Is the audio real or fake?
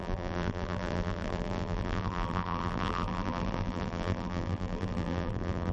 fake